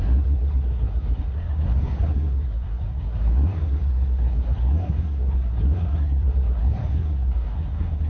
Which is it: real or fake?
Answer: fake